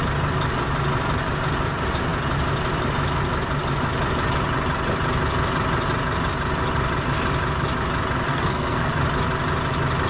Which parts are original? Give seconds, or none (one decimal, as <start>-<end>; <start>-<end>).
0.0-8.3; 8.9-10.1